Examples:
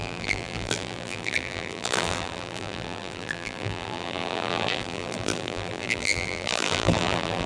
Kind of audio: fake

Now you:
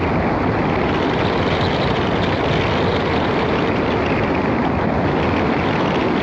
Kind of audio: real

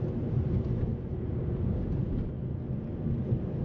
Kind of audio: real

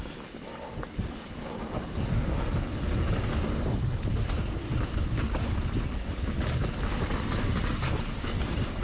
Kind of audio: real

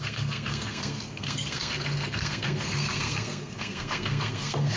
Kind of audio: fake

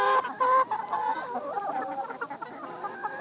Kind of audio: fake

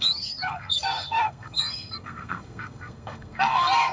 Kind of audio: fake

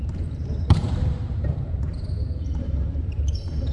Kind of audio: fake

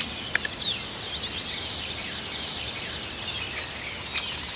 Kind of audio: real